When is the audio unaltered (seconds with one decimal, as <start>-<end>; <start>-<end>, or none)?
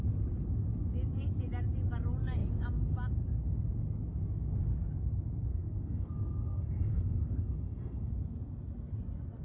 0.0-5.5; 8.1-9.4